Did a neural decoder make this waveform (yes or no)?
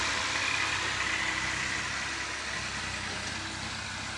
no